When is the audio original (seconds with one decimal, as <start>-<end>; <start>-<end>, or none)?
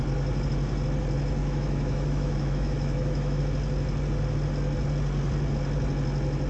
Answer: 0.0-1.4; 3.4-6.5